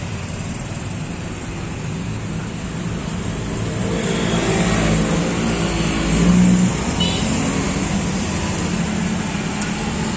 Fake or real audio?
real